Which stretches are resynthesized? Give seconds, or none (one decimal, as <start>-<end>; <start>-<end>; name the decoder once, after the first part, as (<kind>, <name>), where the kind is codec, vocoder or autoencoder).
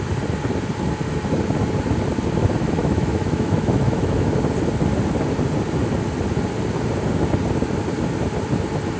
2.8-4.3 (autoencoder, DAC-VAE)